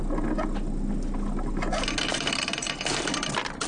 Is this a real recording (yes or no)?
yes